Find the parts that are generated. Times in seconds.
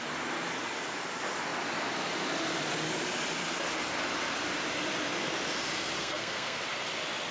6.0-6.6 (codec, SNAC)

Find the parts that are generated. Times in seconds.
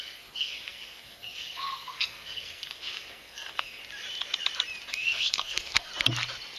0.0-3.8 (codec, SNAC); 4.9-5.9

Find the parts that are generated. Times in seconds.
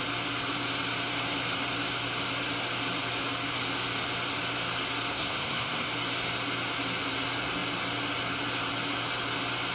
5.1-5.9 (codec, SNAC)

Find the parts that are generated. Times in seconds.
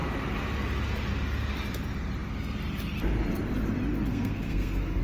4.1-5.0 (codec, SNAC)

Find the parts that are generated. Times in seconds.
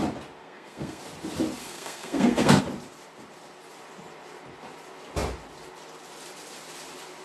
0.4-1.0 (codec, SNAC); 1.6-2.6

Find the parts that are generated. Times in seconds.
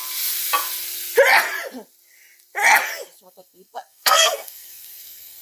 3.2-5.4 (codec, SNAC)